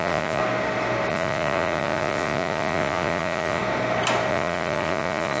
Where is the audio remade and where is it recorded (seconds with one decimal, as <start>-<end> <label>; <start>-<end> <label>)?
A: 0.0-0.4 remade; 0.4-1.1 recorded; 1.1-3.6 remade; 3.6-4.3 recorded; 4.3-5.4 remade